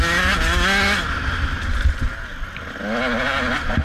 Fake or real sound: real